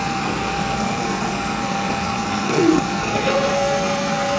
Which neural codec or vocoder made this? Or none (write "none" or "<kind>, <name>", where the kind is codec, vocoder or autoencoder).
codec, SNAC